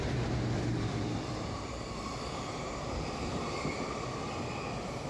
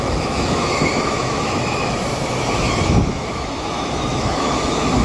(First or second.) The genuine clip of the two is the first